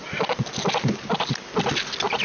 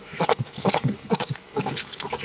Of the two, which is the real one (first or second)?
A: first